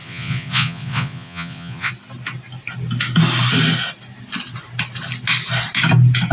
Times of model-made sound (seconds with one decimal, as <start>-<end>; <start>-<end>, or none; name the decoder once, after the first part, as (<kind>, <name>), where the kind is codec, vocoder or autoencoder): 0.0-1.9 (vocoder, Vocos)